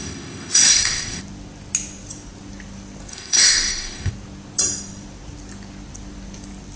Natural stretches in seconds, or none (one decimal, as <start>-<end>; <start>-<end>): 1.2-3.1; 4.1-6.8

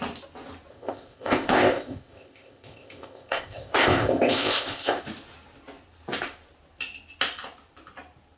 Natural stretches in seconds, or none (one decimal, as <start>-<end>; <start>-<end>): 0.0-0.7; 5.0-8.4

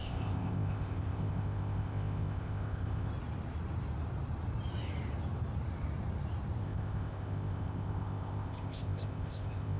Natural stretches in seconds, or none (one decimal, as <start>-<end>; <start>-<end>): 3.1-6.6

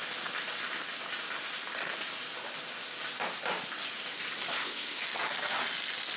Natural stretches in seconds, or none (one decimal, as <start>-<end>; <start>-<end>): 0.0-4.5; 5.0-6.2

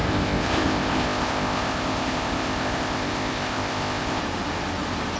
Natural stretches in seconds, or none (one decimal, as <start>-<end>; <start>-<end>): 4.2-5.2

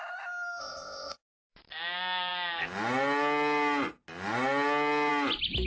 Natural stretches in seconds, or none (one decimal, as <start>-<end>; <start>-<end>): 0.0-0.6; 1.2-5.7

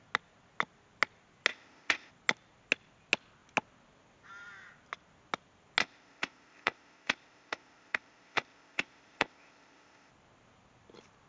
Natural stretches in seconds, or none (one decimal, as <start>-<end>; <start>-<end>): 0.0-1.5; 2.1-5.8; 10.1-11.3